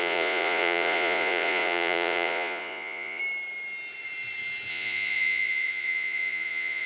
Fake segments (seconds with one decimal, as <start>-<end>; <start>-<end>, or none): 0.0-3.2; 4.7-6.9